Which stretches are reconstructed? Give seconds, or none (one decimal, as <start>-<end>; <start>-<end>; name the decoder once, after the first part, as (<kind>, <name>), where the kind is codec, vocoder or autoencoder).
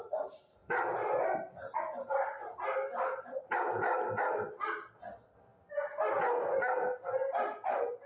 5.5-6.1 (vocoder, BigVGAN v2)